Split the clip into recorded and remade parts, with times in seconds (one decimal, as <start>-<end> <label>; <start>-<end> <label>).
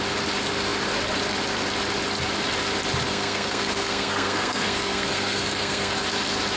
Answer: 0.0-3.1 recorded; 3.1-5.9 remade; 5.9-6.6 recorded